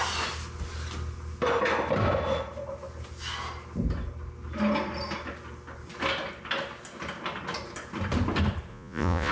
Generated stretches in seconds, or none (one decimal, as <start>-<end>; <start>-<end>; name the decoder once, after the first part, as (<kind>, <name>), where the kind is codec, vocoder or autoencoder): 8.7-9.3 (vocoder, Vocos)